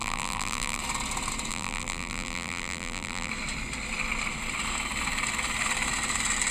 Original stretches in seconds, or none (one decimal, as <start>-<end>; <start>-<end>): 0.8-1.5; 3.3-6.5